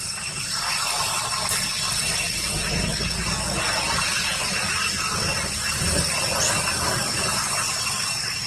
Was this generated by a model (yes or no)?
no